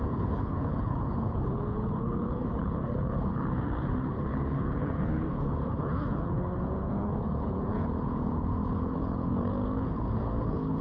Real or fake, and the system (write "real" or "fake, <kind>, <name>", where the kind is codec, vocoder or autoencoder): fake, codec, HILCodec